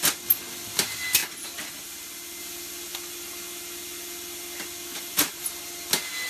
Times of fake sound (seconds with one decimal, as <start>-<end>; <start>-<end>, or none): 5.0-5.5